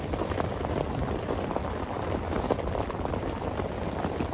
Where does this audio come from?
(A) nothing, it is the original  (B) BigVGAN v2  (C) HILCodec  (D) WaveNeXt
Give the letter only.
B